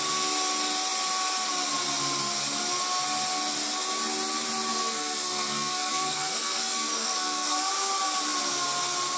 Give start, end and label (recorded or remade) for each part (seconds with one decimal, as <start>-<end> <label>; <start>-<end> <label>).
0.0-4.7 recorded; 4.7-7.7 remade; 7.7-9.2 recorded